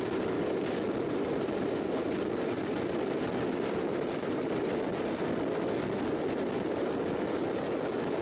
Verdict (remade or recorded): recorded